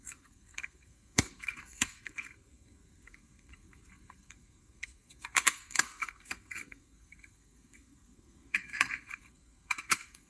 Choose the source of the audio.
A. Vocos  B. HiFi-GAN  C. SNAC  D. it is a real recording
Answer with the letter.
C